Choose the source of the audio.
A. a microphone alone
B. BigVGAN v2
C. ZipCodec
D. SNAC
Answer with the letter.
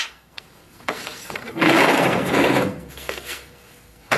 D